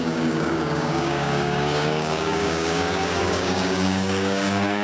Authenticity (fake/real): fake